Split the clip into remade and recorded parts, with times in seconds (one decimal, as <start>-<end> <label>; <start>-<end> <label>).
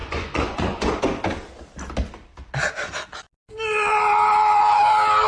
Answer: 0.0-1.0 remade; 1.0-5.3 recorded